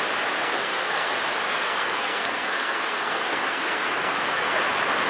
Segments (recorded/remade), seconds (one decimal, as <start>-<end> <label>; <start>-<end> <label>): 0.0-0.4 recorded; 0.4-1.1 remade; 1.1-1.5 recorded; 1.5-4.6 remade; 4.6-5.1 recorded